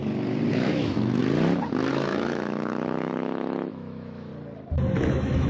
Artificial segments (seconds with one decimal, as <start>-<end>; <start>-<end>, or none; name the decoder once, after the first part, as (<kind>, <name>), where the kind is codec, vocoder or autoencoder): 0.5-1.2 (autoencoder, DAC-VAE); 1.9-4.3; 4.9-5.5